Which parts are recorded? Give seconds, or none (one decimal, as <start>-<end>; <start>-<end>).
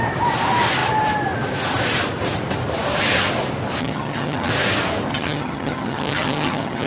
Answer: 0.0-3.8; 4.5-5.1